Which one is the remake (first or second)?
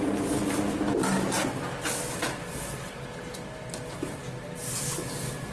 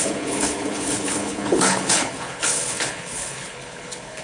second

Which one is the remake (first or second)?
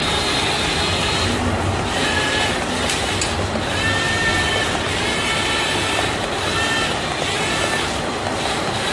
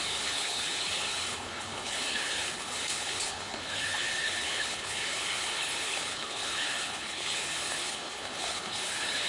second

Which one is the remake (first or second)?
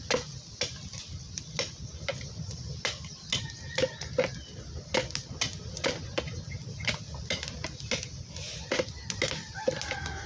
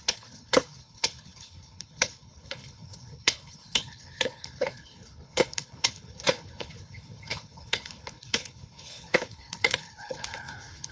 second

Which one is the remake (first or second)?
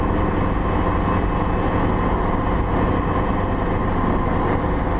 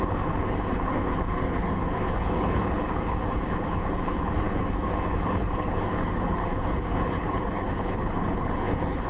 second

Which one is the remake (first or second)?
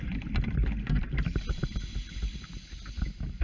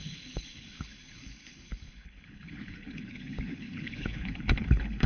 second